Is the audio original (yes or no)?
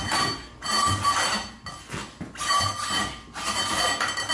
yes